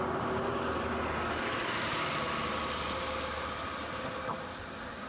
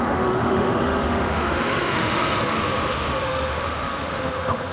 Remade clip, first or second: second